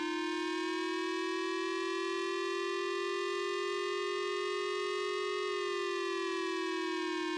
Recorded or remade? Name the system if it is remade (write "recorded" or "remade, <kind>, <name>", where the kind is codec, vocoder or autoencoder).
recorded